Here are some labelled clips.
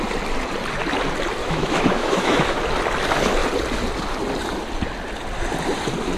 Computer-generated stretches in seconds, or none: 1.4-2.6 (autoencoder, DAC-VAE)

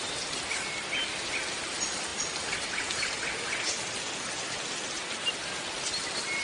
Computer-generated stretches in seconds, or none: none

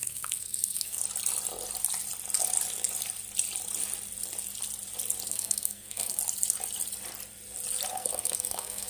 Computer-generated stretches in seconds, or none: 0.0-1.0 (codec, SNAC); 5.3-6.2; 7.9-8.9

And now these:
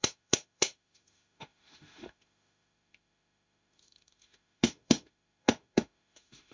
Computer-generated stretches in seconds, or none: 0.0-6.5 (autoencoder, DAC-VAE)

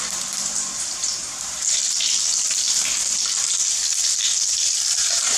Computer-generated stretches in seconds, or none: 0.0-1.8 (vocoder, BigVGAN v2); 5.0-5.4

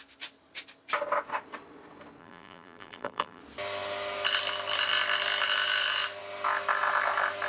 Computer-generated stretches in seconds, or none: 2.2-3.4 (vocoder, BigVGAN v2)

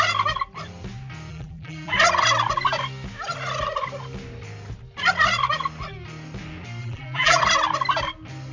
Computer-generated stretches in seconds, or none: 1.3-1.9 (vocoder, BigVGAN v2); 6.8-7.4